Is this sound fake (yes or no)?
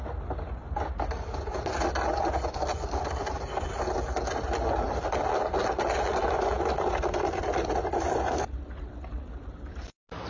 no